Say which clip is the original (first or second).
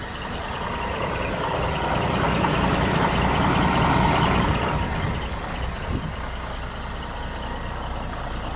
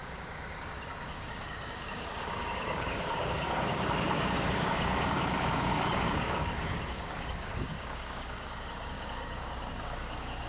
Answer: first